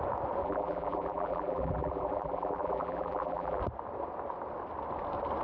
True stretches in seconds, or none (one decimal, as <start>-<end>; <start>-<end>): 0.0-0.4; 3.6-5.4